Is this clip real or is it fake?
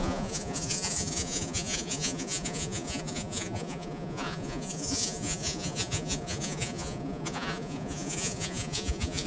fake